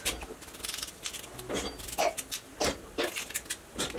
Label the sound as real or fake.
real